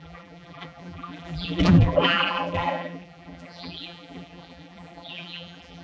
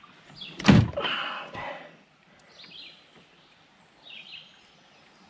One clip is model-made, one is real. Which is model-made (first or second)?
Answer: first